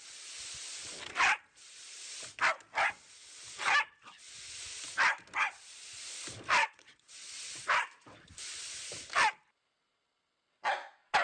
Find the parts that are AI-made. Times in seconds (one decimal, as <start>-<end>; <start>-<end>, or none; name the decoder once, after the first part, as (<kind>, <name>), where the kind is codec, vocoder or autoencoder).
6.6-7.7 (vocoder, WaveNeXt)